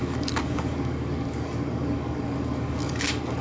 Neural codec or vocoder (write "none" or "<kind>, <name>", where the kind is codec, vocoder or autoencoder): codec, DAC